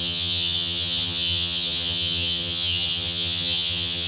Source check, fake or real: fake